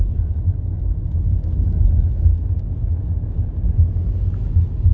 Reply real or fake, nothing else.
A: real